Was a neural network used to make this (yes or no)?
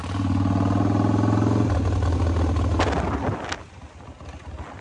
no